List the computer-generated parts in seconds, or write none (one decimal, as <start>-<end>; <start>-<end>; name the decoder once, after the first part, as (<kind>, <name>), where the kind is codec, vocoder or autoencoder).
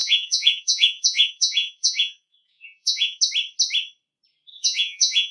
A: 0.0-3.2 (vocoder, Vocos); 4.5-5.3